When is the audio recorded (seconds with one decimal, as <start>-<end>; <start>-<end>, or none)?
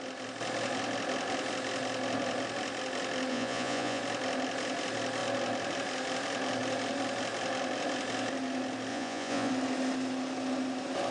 0.0-3.3; 4.0-8.9; 9.5-11.1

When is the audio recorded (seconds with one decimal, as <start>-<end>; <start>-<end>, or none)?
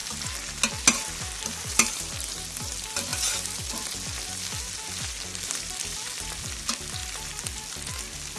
0.0-8.4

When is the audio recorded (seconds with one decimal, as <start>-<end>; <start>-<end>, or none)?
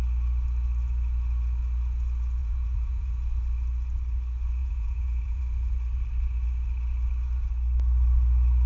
0.0-2.4; 3.1-4.6; 5.4-8.7